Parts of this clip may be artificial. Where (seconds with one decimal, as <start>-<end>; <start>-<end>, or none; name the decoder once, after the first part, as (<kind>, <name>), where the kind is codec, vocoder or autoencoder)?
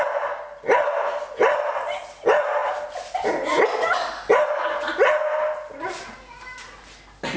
none